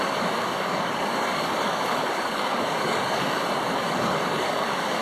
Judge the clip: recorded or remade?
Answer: remade